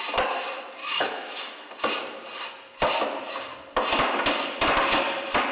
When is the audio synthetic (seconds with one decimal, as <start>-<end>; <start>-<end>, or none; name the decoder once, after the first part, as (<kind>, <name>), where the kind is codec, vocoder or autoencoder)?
0.8-1.7 (autoencoder, DAC-VAE)